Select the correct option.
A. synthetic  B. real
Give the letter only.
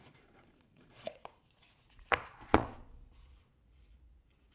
A